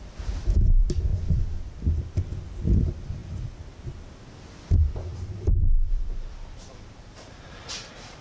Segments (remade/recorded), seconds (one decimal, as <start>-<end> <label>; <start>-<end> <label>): 0.0-5.1 recorded; 5.1-8.2 remade